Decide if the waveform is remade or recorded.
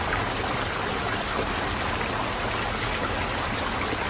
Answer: recorded